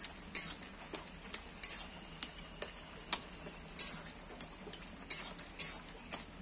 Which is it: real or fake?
real